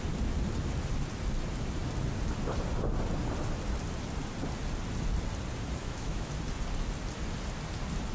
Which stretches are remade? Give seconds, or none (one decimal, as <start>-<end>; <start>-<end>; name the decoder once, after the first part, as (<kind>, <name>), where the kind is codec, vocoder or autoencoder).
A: 5.8-6.3 (autoencoder, DAC-VAE)